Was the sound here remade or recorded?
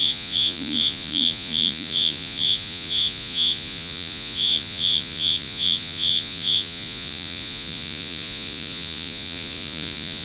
remade